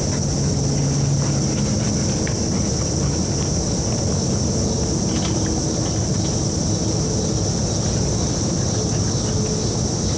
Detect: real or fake real